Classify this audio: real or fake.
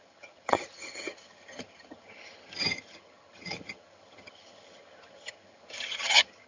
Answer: fake